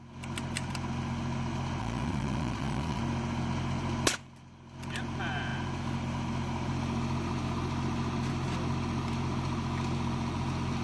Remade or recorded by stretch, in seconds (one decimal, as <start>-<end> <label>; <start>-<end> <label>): 0.0-1.8 recorded; 1.8-3.0 remade; 3.0-10.8 recorded

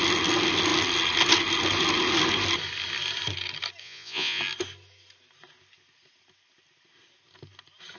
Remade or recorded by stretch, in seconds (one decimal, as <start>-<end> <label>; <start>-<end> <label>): 0.0-3.8 recorded; 3.8-4.4 remade; 4.4-8.0 recorded

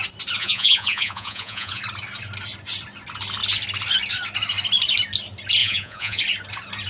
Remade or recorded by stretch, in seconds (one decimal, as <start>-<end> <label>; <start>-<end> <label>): 0.0-0.4 recorded; 0.4-1.8 remade; 1.8-5.6 recorded; 5.6-6.2 remade; 6.2-6.9 recorded

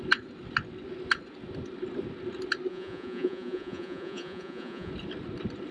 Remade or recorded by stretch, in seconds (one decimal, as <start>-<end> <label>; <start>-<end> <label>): 0.0-2.7 recorded; 2.7-4.9 remade; 4.9-5.7 recorded

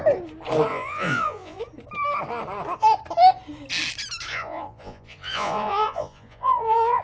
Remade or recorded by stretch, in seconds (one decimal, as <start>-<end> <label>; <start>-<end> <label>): 0.0-0.7 recorded; 0.7-1.6 remade; 1.6-4.3 recorded; 4.3-7.0 remade

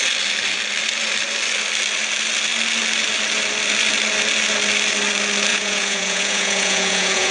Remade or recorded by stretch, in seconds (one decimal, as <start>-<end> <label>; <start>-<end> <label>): 0.0-5.5 recorded; 5.5-7.3 remade

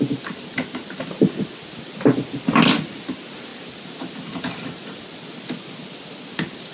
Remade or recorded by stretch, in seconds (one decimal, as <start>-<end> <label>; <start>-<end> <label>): 0.0-6.7 recorded

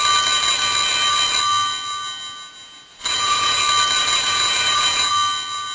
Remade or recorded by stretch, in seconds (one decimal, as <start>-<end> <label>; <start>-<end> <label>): 0.0-2.9 recorded; 2.9-3.6 remade; 3.6-4.0 recorded; 4.0-5.1 remade; 5.1-5.7 recorded